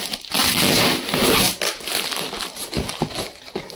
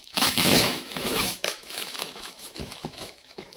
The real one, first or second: first